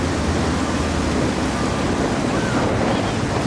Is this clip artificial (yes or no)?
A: no